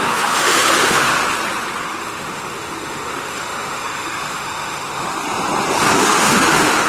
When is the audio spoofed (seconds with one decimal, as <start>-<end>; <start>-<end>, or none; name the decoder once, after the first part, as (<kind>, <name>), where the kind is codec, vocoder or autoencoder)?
0.0-1.2 (autoencoder, DAC-VAE); 2.0-5.1; 5.7-6.9